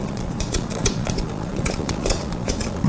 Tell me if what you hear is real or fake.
fake